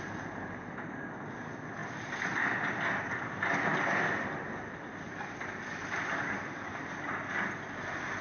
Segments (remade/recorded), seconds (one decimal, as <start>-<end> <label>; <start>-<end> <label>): 0.0-8.2 recorded